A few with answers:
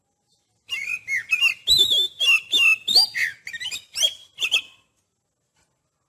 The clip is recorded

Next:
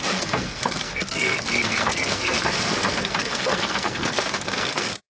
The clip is remade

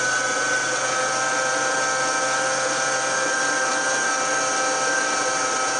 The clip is recorded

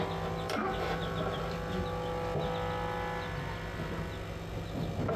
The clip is recorded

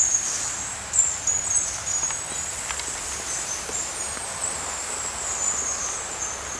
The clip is recorded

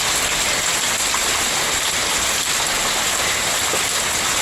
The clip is recorded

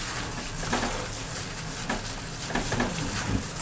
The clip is recorded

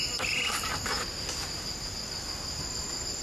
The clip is recorded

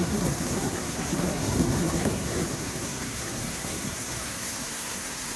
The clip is remade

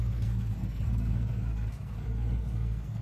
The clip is remade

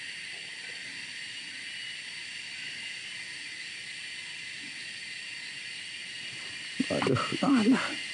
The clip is recorded